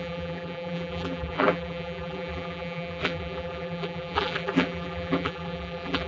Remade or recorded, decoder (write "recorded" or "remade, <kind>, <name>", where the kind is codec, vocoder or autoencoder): remade, vocoder, BigVGAN v2